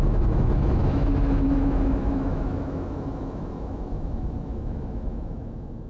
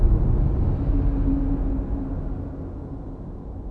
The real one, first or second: second